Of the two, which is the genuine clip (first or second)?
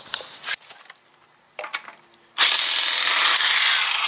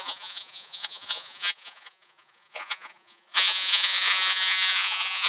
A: first